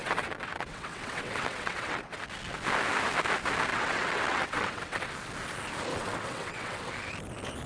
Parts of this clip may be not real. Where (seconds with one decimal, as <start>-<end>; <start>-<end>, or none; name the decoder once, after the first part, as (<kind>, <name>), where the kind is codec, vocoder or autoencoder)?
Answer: 0.0-2.2 (vocoder, WaveNeXt); 3.7-5.1; 5.9-6.9